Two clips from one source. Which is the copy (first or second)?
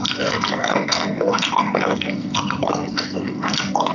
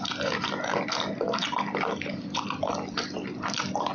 first